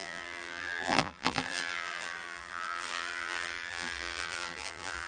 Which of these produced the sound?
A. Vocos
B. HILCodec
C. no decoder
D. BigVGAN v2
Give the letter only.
D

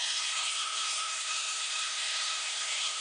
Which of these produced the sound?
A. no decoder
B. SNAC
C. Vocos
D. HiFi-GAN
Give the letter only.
B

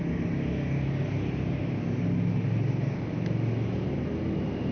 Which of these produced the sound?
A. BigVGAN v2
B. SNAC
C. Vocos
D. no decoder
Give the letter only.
D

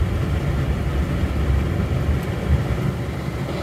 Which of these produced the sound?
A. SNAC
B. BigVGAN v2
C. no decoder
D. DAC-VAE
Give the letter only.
C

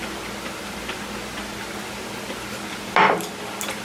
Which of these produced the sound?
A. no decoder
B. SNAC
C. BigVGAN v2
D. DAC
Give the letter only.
A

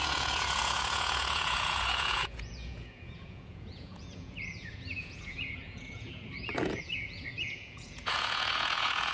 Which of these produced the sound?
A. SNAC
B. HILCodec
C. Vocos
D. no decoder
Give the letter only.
C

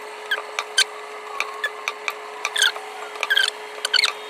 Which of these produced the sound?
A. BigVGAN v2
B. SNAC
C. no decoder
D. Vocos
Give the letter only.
C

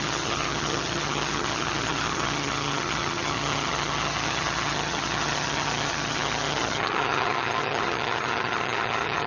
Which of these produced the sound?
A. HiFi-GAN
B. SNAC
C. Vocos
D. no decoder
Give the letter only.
A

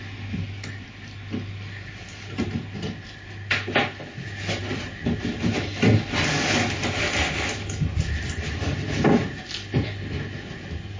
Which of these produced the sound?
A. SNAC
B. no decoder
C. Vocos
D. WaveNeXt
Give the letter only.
B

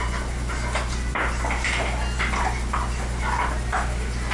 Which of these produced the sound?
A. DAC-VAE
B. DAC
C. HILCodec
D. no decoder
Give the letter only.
D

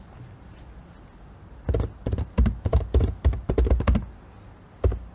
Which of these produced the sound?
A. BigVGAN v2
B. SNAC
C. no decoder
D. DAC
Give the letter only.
C